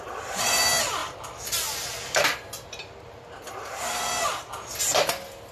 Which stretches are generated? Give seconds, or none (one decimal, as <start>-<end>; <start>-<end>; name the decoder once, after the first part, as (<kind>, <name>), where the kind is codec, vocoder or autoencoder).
none

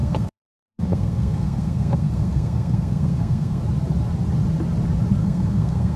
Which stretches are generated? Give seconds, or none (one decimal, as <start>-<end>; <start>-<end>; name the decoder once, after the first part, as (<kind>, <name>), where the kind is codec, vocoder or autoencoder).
0.0-3.6 (codec, SNAC); 5.2-6.0

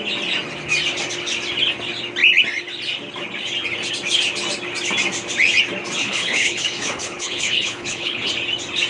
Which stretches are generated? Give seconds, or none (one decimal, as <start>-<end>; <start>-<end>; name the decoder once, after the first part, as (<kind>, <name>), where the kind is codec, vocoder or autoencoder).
6.0-8.3 (codec, HILCodec)

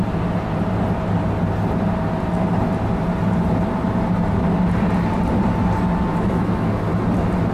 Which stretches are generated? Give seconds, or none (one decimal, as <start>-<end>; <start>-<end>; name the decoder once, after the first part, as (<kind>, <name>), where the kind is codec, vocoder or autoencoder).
6.1-6.7 (autoencoder, DAC-VAE)

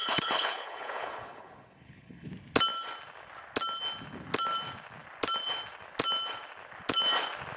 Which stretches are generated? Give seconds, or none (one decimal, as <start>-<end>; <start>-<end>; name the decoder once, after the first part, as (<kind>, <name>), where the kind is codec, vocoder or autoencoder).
0.0-2.3 (codec, HILCodec)